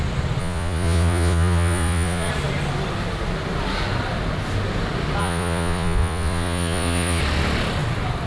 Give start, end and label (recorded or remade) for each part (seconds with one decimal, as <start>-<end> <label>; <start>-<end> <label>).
0.0-0.4 recorded; 0.4-2.3 remade; 2.3-5.2 recorded; 5.2-7.2 remade; 7.2-8.3 recorded